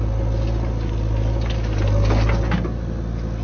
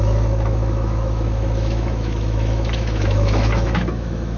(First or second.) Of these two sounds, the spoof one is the second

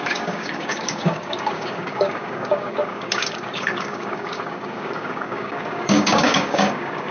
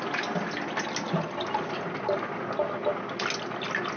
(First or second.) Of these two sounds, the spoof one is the first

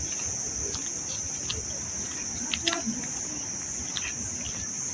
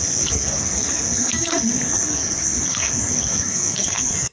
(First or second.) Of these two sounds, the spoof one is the second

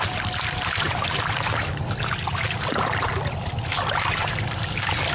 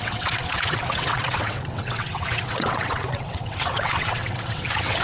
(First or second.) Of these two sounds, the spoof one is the second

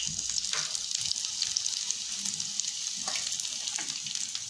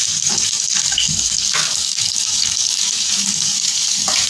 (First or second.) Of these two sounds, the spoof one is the second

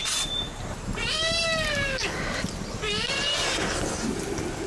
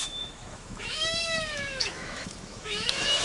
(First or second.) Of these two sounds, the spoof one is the second